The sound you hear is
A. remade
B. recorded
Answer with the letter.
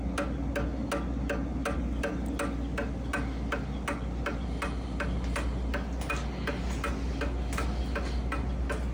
B